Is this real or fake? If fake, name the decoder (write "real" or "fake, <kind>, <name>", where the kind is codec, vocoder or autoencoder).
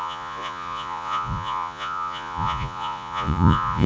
fake, vocoder, Vocos